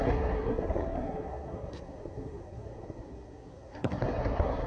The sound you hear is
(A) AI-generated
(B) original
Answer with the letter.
A